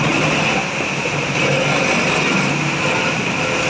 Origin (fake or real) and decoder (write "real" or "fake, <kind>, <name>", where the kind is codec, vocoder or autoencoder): real